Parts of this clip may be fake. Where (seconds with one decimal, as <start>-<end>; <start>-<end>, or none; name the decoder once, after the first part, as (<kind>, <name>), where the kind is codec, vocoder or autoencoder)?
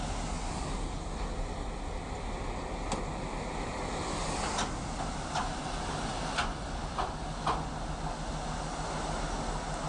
none